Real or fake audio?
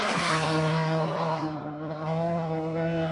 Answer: fake